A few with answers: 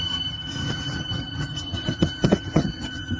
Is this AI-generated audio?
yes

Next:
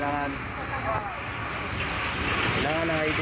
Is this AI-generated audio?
no